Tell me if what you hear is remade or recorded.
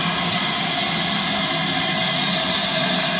recorded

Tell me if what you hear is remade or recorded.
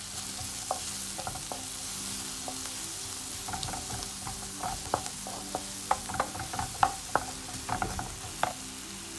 recorded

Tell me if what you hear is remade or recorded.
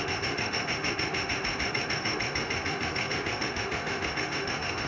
remade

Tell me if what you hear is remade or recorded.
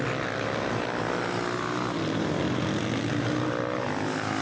recorded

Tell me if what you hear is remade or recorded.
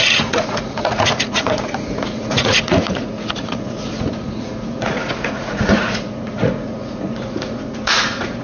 remade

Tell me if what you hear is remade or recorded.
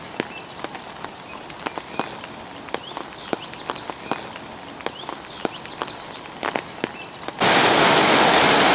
recorded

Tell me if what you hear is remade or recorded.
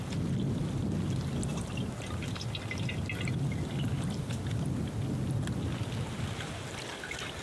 recorded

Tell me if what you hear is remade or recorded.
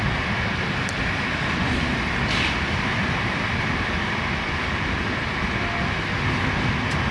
recorded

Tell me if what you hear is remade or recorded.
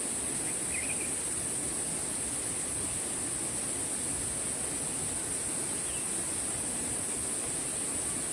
recorded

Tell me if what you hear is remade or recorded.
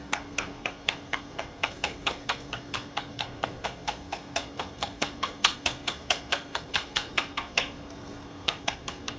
remade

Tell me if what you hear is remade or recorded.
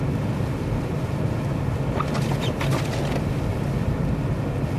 recorded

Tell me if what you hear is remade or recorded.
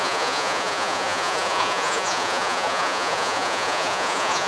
remade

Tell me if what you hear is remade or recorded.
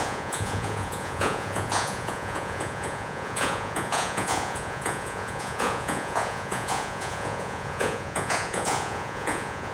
remade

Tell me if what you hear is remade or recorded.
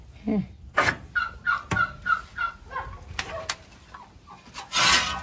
recorded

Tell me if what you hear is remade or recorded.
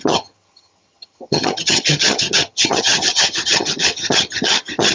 remade